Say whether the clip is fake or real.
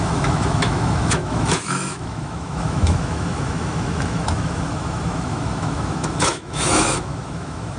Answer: fake